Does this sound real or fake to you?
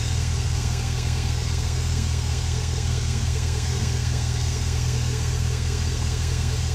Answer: fake